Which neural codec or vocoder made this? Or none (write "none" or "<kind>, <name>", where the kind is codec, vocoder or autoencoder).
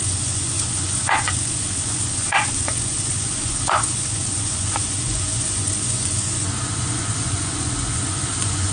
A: vocoder, Vocos